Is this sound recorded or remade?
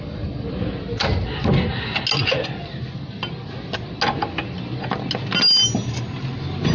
recorded